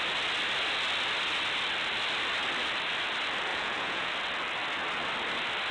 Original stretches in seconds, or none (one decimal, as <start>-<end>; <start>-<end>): 0.0-3.5; 4.1-5.7